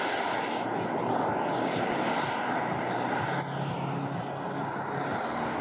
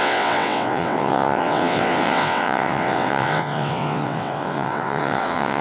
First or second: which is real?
first